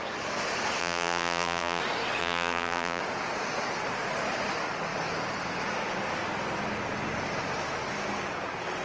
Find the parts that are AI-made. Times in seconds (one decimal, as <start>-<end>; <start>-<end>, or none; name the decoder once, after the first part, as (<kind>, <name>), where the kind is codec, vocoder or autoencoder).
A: 0.8-1.8 (vocoder, BigVGAN v2); 2.2-3.0